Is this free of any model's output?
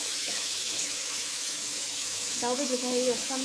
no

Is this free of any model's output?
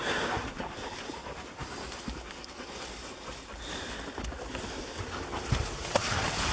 yes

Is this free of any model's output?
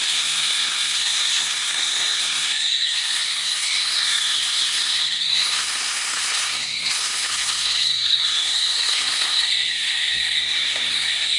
no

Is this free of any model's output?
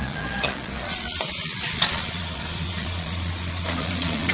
no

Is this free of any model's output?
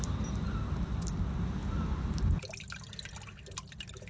yes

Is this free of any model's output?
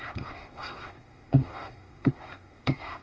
no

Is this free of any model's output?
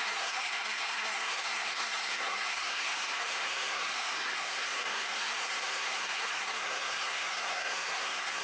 no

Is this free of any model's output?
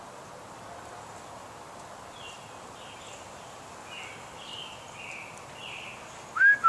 yes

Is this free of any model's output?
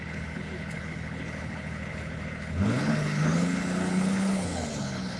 no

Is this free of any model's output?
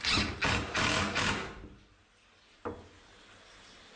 yes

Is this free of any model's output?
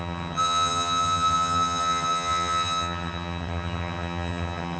no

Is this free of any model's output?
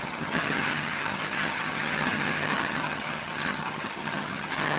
no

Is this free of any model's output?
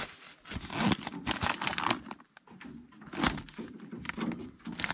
yes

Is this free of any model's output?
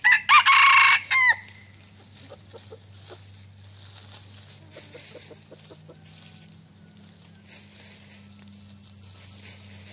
yes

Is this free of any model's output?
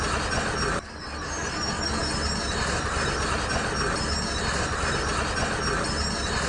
yes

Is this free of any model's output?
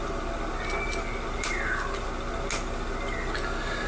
yes